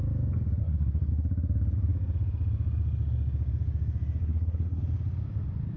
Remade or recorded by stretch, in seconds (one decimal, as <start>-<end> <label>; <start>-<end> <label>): 0.0-0.6 recorded; 0.6-1.1 remade; 1.1-4.2 recorded; 4.2-4.8 remade; 4.8-5.8 recorded